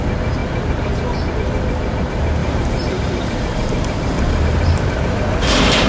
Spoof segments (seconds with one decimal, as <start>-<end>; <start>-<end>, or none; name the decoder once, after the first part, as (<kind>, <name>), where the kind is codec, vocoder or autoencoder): 2.4-5.9 (vocoder, BigVGAN v2)